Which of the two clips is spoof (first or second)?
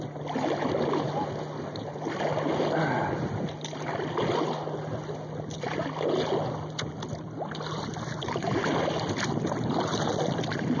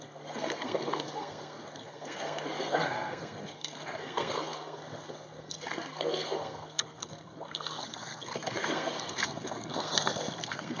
second